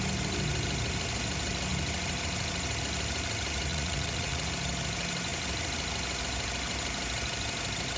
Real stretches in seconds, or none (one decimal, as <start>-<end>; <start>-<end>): 0.0-3.7; 4.5-8.0